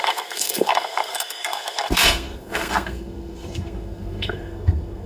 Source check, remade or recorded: remade